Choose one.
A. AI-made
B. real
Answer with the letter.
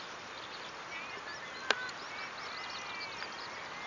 B